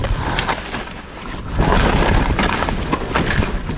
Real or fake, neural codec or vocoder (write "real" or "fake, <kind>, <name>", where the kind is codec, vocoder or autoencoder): real